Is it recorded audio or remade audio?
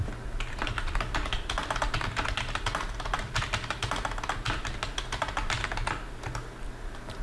recorded